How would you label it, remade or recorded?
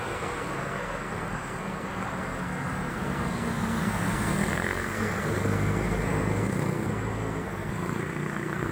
remade